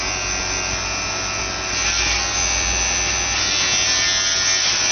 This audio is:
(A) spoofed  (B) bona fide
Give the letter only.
B